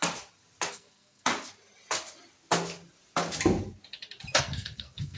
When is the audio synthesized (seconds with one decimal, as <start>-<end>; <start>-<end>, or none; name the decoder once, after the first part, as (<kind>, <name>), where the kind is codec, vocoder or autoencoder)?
0.7-1.3 (codec, SNAC); 4.4-5.2

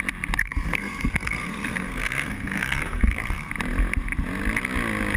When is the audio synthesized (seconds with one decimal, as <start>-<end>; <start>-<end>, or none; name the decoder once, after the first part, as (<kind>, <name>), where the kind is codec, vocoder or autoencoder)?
0.4-3.5 (codec, SNAC)

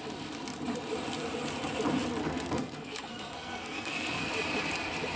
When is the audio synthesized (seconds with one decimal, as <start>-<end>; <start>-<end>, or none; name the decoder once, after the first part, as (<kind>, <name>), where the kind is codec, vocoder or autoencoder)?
2.2-4.3 (codec, SNAC)

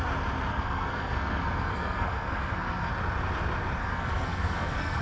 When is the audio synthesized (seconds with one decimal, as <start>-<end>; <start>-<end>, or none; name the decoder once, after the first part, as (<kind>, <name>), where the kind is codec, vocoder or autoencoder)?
0.5-2.9 (codec, SNAC); 3.8-5.0

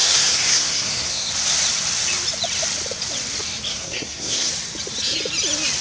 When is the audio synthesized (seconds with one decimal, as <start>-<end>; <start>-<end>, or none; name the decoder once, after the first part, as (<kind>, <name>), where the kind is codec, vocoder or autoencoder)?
0.0-1.3 (codec, SNAC); 3.7-4.5

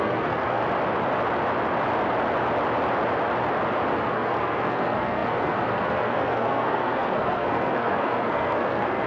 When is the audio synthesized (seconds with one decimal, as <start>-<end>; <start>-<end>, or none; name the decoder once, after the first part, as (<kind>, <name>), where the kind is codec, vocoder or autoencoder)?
0.0-0.6 (codec, SNAC); 3.9-9.1

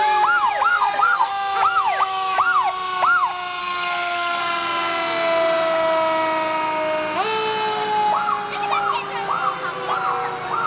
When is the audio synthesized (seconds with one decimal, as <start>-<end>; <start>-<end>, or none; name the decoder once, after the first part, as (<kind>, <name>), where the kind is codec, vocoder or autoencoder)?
0.7-1.3 (codec, SNAC); 3.6-4.4